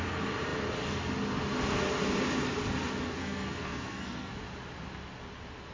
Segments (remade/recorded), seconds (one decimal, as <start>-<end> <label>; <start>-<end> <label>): 0.0-3.2 recorded; 3.2-4.3 remade; 4.3-5.7 recorded